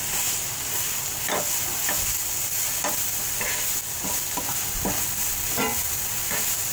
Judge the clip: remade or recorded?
recorded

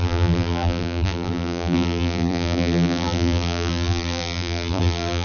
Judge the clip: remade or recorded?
remade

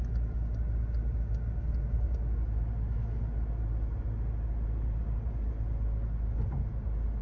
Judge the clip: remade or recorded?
recorded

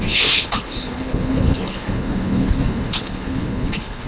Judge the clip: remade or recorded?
remade